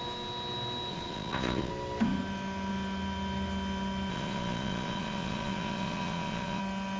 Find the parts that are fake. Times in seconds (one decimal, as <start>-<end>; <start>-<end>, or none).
0.9-1.7; 4.1-6.6